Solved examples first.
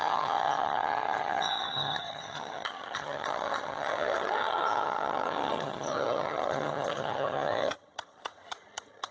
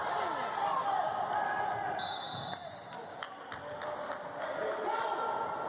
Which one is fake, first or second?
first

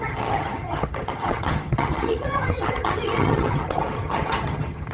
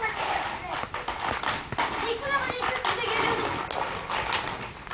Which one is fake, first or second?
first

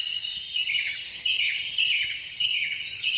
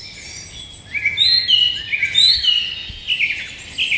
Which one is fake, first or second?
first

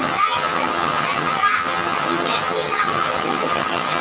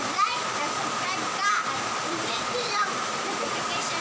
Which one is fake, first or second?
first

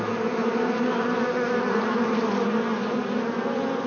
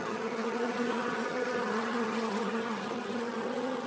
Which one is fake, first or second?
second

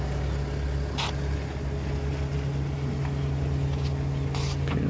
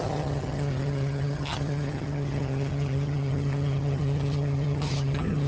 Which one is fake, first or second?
second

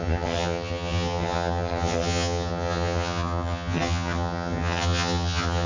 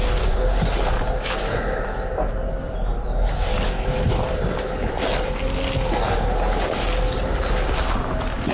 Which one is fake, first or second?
first